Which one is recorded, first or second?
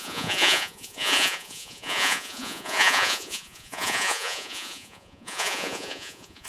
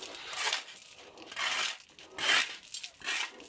second